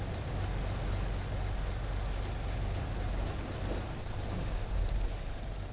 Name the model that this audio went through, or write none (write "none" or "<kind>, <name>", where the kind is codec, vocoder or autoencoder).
none